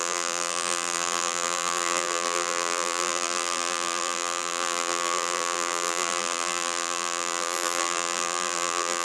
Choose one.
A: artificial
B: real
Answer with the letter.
A